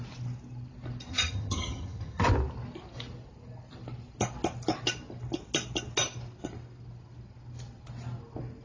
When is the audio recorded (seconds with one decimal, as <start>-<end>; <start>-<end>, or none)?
0.0-1.1; 2.2-8.6